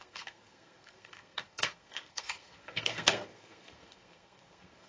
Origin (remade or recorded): remade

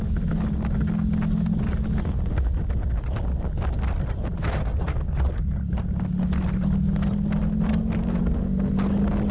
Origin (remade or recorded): recorded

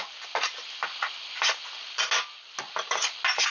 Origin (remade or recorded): recorded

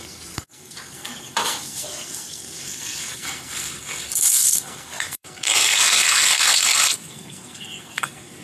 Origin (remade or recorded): remade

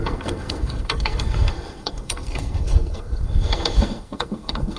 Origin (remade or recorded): remade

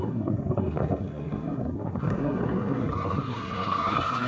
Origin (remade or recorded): remade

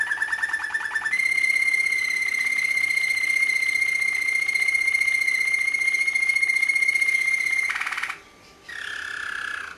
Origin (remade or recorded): recorded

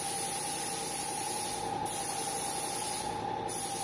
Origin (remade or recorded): recorded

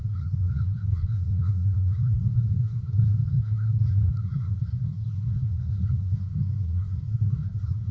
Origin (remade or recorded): remade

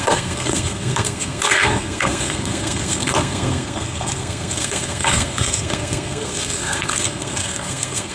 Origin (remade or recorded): remade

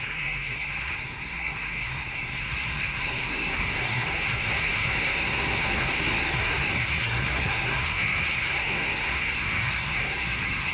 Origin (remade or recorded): remade